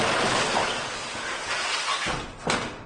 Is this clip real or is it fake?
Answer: real